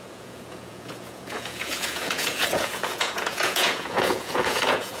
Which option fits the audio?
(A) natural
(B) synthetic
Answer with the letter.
B